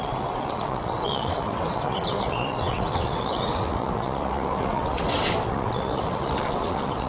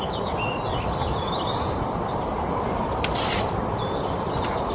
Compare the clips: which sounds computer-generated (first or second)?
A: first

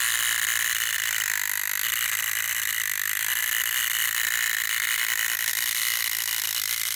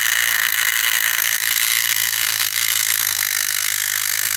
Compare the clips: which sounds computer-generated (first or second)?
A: second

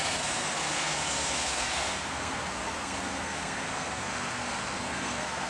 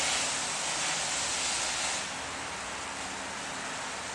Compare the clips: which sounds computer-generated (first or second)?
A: first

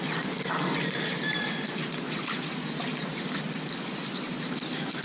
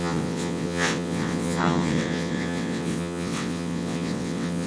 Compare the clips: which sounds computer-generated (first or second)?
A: second